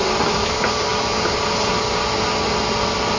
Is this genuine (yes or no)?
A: yes